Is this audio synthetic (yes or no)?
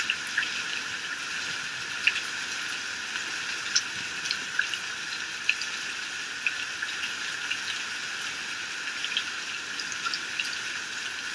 no